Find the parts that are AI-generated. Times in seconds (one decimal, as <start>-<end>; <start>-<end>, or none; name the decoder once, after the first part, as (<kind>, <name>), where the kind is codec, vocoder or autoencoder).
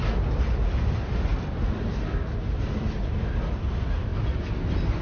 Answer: none